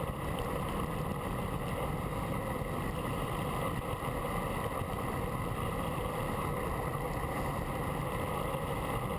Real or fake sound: real